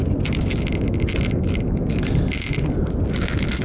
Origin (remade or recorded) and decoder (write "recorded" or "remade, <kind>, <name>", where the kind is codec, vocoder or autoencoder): recorded